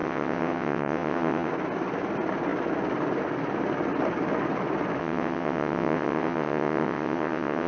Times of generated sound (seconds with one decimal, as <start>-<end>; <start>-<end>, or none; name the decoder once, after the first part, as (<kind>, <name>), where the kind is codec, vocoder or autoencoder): 0.0-1.5 (vocoder, WaveNeXt); 5.0-7.7